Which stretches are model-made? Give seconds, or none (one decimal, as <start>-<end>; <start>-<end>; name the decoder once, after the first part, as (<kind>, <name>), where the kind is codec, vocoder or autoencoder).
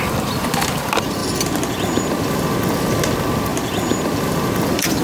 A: none